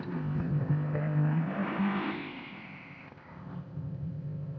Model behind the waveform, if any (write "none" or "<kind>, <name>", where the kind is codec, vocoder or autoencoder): codec, ZipCodec